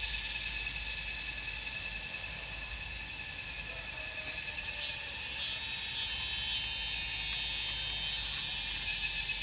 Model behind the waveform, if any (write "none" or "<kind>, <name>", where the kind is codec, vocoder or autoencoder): none